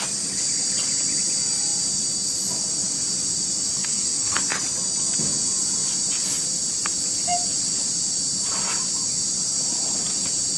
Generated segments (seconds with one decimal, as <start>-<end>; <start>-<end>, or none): 3.8-4.4